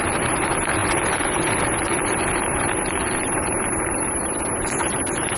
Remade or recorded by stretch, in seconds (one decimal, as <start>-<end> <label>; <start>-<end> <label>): 0.0-5.4 remade